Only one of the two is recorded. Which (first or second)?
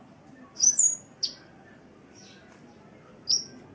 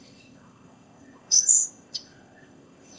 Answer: first